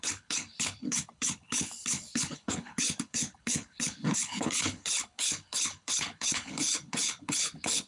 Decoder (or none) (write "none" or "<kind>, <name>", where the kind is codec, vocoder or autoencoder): codec, HILCodec